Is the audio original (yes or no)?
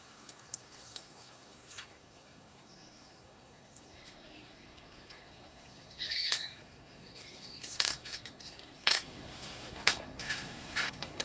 no